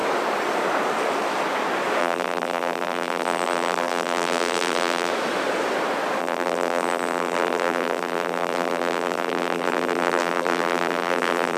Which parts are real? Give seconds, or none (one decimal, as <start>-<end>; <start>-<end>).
0.0-2.0; 5.1-6.2